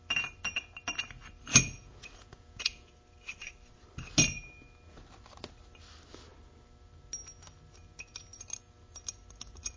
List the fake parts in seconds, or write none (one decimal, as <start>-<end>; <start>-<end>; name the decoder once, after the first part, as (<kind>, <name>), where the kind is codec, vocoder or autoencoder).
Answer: 1.5-2.9 (vocoder, Vocos)